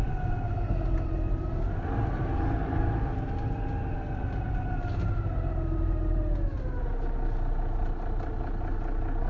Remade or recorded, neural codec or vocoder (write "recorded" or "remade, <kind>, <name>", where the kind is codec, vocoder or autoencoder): recorded